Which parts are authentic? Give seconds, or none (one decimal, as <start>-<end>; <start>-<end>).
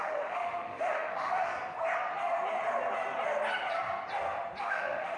1.5-4.6